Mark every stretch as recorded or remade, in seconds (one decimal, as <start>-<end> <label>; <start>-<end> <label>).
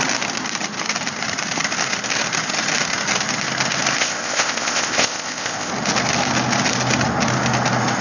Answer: 0.0-4.0 recorded; 4.0-5.7 remade; 5.7-8.0 recorded